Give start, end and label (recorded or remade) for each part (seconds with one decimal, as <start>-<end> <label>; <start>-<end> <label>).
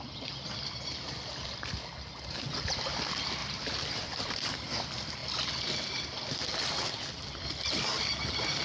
0.0-3.4 recorded; 3.4-4.5 remade; 4.5-8.6 recorded